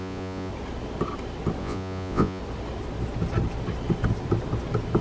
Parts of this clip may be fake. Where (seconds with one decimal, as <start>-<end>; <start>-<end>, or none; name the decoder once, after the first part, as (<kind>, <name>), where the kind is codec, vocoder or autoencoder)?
0.0-0.5 (vocoder, Vocos); 1.6-2.4